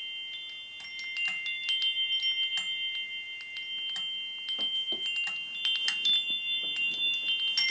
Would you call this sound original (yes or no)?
yes